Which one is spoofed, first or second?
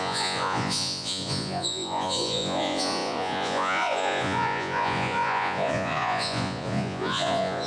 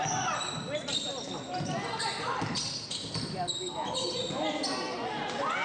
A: first